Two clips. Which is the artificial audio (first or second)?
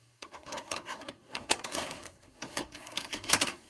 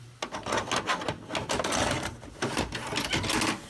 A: first